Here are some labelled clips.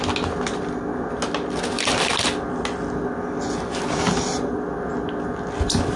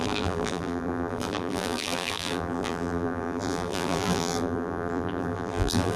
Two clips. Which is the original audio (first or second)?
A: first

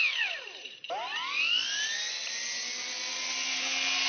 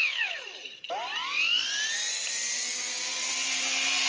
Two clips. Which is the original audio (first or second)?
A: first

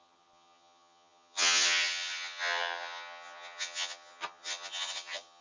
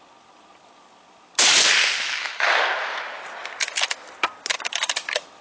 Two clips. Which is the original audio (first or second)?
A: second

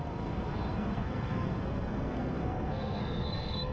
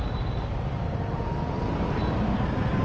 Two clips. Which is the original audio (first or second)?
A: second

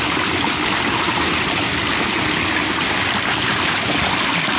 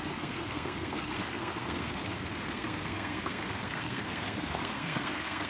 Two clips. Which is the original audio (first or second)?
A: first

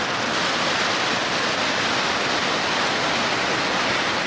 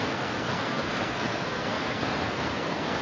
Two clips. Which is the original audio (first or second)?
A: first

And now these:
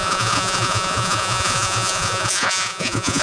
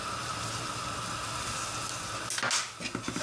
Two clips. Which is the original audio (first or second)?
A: second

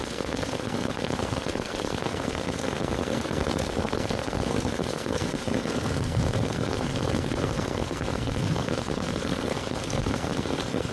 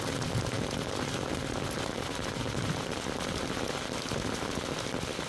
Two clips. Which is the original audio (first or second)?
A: second